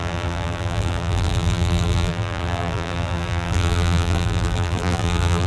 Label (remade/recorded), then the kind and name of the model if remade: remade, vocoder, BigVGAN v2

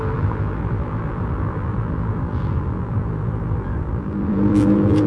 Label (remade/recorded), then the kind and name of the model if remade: remade, vocoder, BigVGAN v2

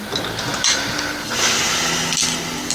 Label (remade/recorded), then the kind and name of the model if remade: recorded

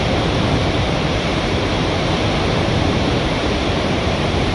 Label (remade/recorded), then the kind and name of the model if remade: remade, vocoder, BigVGAN v2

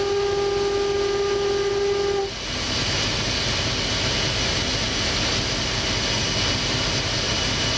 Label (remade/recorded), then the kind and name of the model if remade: recorded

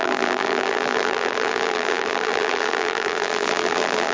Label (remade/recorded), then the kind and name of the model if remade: remade, vocoder, BigVGAN v2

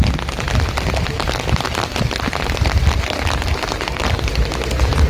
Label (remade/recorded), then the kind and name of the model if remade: recorded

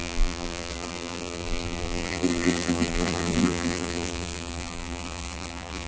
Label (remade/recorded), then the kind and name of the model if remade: remade, vocoder, BigVGAN v2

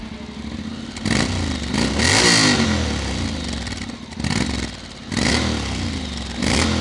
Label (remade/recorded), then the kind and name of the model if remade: recorded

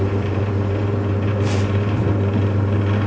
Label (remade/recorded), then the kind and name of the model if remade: remade, vocoder, BigVGAN v2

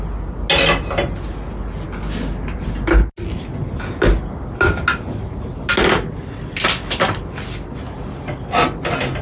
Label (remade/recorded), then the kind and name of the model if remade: recorded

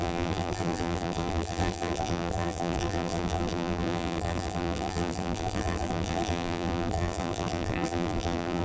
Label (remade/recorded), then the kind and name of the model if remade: remade, vocoder, BigVGAN v2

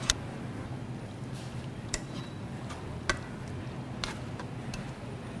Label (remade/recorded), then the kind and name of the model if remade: recorded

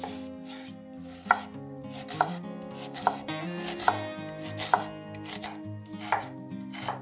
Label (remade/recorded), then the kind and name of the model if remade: recorded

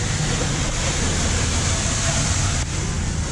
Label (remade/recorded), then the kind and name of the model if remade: recorded